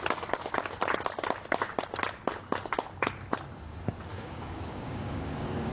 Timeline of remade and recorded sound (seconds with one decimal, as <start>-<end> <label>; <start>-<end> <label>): 0.0-4.1 recorded; 4.1-5.7 remade